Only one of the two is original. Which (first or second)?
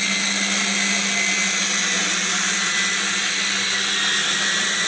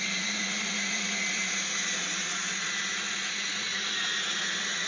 first